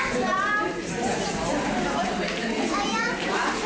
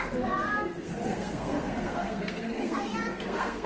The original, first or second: first